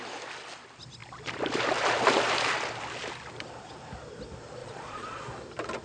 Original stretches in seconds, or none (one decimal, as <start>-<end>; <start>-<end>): 0.0-4.6; 5.2-5.8